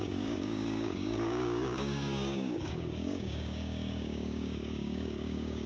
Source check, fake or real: fake